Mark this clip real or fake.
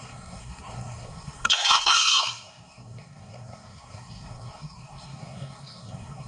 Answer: fake